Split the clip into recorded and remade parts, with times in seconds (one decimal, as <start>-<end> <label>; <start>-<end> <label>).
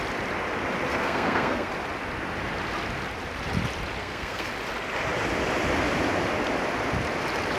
0.0-0.9 recorded; 0.9-1.7 remade; 1.7-4.0 recorded; 4.0-4.5 remade; 4.5-7.6 recorded